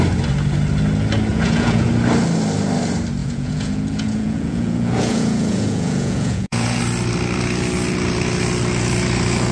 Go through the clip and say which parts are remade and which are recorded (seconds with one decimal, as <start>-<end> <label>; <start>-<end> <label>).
0.0-1.3 recorded; 1.3-1.9 remade; 1.9-3.2 recorded; 3.2-6.8 remade; 6.8-9.5 recorded